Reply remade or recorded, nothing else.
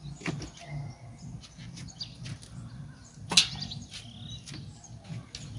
recorded